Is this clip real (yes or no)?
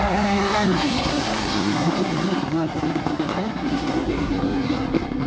no